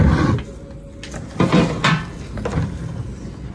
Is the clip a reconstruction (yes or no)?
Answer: no